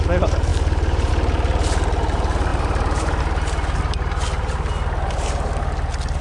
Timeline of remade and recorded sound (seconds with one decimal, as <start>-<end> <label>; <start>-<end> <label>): 0.0-0.5 recorded; 0.5-1.1 remade; 1.1-2.5 recorded; 2.5-3.2 remade; 3.2-6.2 recorded